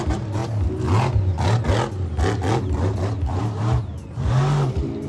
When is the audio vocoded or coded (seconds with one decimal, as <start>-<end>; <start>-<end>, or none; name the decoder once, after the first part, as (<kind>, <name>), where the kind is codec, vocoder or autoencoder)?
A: none